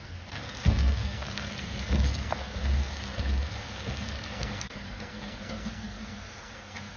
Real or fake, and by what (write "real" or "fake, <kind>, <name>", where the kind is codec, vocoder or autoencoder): fake, codec, SNAC